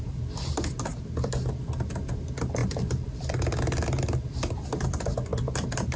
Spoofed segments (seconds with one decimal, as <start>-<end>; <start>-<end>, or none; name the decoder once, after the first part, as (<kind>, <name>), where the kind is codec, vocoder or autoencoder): none